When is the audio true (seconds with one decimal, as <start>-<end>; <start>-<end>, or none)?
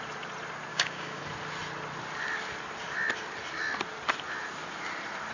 0.0-0.7; 1.2-5.3